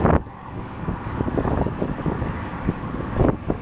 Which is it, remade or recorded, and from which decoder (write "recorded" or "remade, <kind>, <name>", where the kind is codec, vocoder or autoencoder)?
remade, codec, DAC